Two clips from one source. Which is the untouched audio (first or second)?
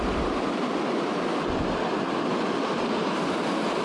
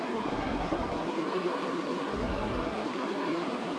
first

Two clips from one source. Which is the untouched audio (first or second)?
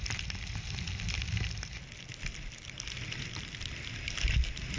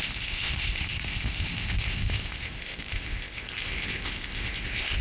first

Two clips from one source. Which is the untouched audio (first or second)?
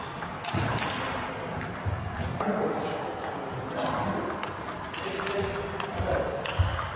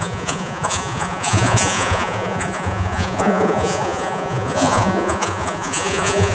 first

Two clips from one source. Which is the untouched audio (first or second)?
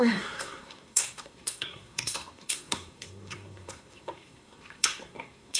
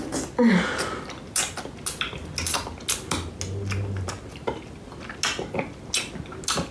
second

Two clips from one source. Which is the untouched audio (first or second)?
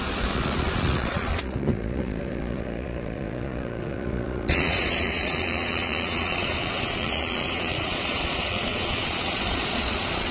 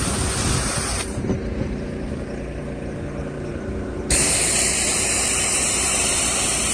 second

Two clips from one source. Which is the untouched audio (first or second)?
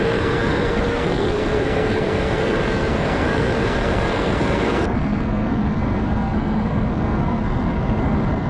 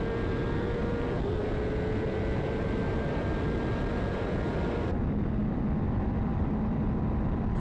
second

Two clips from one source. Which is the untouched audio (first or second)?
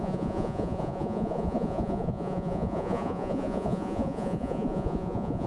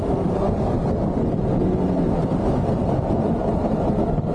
second